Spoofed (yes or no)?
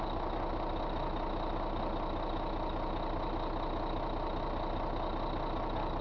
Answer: no